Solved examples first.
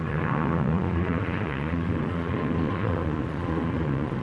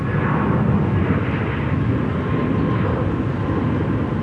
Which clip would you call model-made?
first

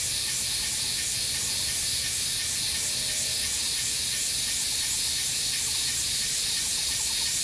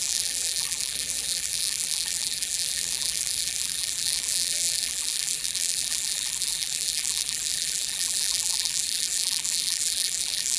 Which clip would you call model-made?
second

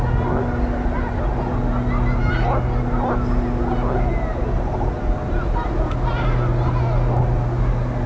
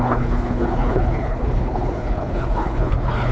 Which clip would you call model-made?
second